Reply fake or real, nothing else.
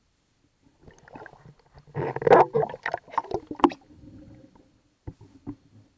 real